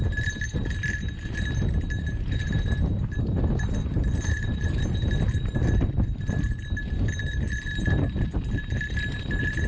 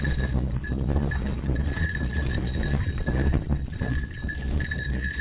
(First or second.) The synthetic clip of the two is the second